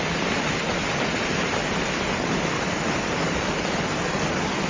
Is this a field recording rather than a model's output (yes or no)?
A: yes